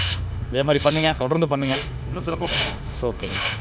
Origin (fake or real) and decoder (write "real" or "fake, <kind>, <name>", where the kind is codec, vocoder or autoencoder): fake, autoencoder, DAC-VAE